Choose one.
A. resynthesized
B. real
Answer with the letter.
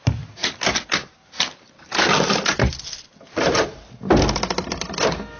B